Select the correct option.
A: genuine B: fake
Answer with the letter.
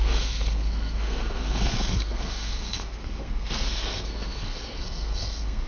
B